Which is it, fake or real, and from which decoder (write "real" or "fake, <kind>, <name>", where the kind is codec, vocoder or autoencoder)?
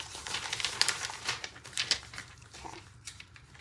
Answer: fake, vocoder, BigVGAN v2